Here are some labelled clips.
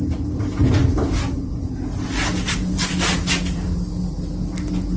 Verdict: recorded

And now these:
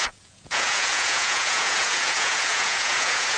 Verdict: remade